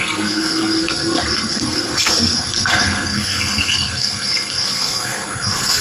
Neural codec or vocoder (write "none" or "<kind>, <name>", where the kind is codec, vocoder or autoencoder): codec, SNAC